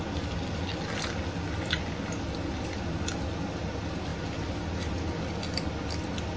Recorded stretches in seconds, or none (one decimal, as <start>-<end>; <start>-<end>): 0.0-6.4